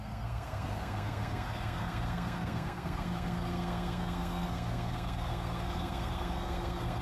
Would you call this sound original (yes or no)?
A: no